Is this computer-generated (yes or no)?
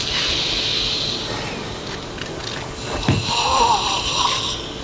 no